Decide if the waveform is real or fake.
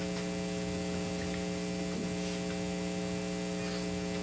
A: real